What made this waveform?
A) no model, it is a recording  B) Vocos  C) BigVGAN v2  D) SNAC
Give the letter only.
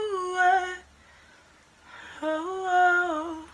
A